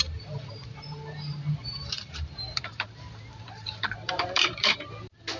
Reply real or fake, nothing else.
fake